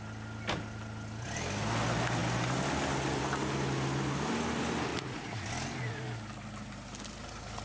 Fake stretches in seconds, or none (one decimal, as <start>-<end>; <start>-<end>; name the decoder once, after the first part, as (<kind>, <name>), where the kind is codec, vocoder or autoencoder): 4.9-5.5 (vocoder, Vocos)